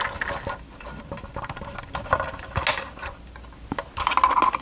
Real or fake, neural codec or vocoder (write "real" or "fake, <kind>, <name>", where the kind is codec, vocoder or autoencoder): real